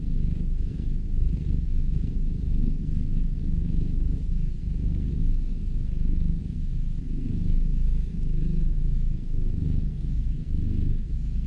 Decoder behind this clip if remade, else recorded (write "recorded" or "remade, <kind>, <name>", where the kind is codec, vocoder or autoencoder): remade, codec, SNAC